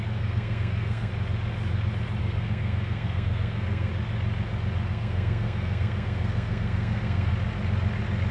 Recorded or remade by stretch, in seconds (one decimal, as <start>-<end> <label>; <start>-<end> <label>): 0.0-1.1 remade; 1.1-2.2 recorded; 2.2-3.9 remade; 3.9-4.9 recorded; 4.9-7.3 remade; 7.3-8.3 recorded